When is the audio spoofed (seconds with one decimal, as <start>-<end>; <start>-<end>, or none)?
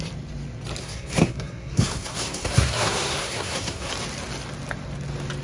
0.8-3.9